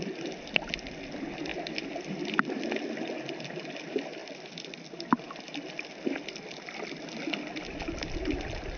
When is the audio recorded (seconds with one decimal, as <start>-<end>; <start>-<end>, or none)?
0.0-8.8